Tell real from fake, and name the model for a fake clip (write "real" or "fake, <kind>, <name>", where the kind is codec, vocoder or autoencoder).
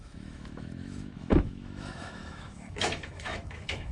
fake, autoencoder, DAC-VAE